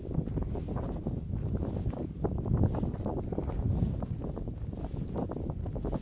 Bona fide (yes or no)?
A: yes